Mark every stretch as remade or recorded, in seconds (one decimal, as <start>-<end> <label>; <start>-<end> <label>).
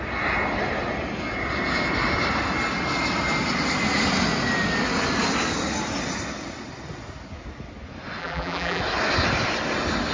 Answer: 0.0-8.2 recorded; 8.2-8.8 remade; 8.8-10.1 recorded